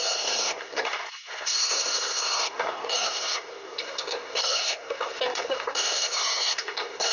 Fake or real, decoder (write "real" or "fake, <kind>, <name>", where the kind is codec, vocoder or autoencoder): fake, codec, SNAC